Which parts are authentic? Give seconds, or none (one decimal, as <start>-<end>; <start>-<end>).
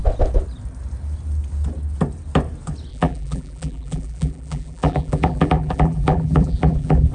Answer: 0.0-2.9